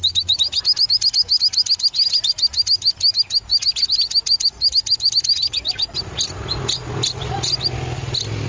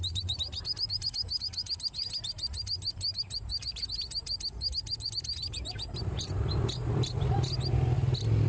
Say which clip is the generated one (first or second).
second